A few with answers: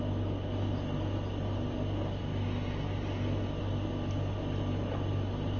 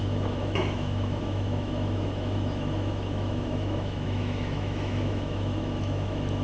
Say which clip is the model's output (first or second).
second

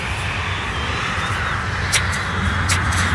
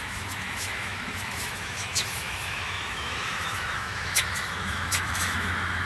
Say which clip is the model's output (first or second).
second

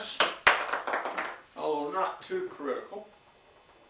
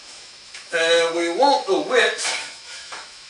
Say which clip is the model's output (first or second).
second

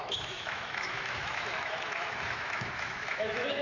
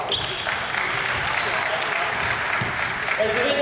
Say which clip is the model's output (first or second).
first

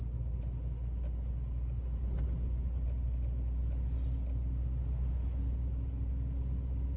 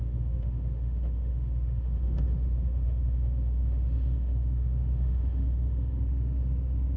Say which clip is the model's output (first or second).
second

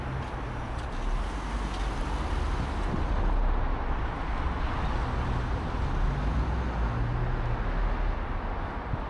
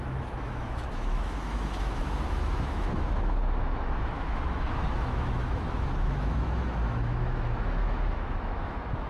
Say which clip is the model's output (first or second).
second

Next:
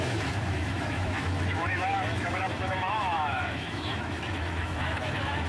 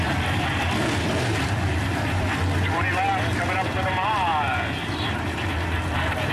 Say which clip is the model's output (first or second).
first